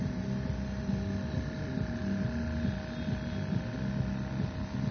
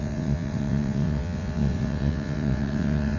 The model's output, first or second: second